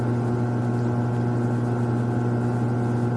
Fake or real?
real